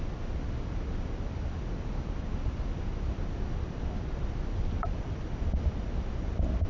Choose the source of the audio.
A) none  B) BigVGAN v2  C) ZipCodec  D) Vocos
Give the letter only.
A